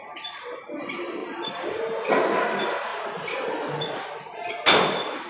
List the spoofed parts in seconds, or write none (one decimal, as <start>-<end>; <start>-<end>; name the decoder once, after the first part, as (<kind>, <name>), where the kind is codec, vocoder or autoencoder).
1.2-1.8 (vocoder, BigVGAN v2); 2.9-4.5

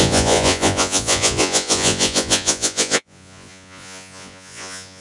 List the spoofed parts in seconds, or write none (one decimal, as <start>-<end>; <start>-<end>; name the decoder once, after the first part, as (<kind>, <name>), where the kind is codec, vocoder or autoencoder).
0.0-5.0 (vocoder, Vocos)

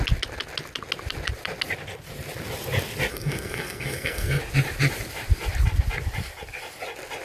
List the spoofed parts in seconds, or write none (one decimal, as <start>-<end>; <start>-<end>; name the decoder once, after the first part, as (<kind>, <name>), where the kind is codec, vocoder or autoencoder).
3.1-4.4 (codec, SNAC)